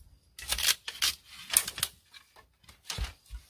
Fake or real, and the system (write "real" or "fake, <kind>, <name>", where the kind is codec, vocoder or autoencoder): real